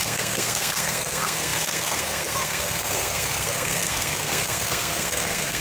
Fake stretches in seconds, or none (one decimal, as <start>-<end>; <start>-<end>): 0.0-5.6